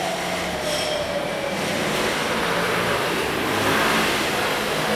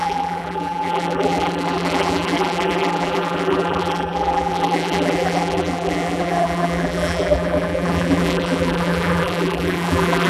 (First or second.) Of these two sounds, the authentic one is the first